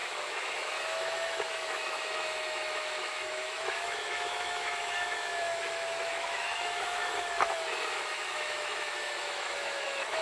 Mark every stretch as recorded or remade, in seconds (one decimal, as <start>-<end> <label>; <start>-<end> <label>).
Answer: 0.0-10.2 remade